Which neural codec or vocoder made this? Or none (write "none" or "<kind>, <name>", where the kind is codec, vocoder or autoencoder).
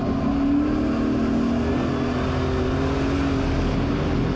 none